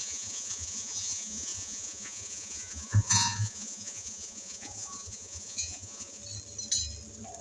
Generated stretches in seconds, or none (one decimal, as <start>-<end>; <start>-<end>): 0.0-6.2